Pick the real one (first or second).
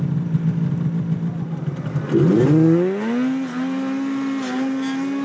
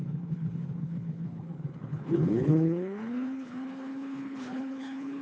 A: first